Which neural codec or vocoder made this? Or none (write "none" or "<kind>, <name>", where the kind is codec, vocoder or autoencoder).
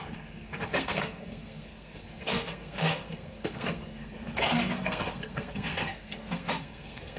codec, SNAC